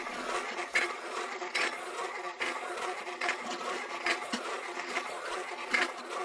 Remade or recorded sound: remade